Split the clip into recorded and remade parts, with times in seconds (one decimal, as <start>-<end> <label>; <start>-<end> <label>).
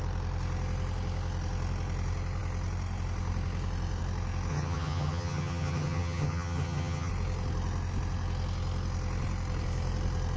0.0-4.5 recorded; 4.5-7.1 remade; 7.1-10.4 recorded